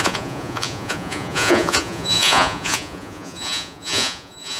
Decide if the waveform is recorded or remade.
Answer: remade